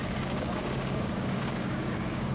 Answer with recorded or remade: remade